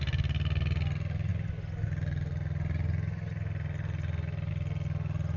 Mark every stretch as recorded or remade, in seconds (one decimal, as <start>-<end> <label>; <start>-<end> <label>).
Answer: 0.0-5.4 recorded